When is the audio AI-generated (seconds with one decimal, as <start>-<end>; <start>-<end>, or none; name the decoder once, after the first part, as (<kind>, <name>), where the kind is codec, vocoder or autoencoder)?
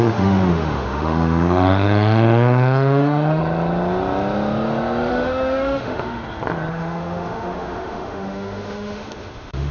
0.0-3.4 (autoencoder, DAC-VAE); 5.1-6.2; 6.7-9.7